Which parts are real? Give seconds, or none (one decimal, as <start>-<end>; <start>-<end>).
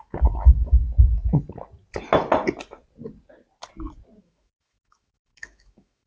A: 0.8-4.2